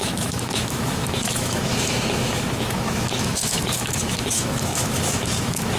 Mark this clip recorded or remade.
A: remade